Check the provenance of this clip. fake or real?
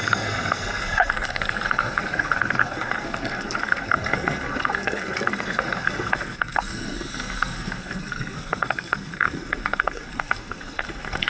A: fake